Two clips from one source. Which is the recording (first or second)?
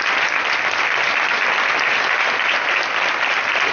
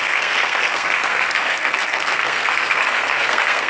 first